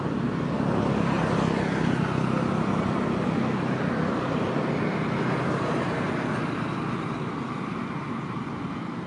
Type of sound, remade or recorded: recorded